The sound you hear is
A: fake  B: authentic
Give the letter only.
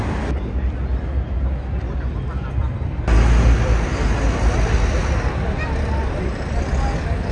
B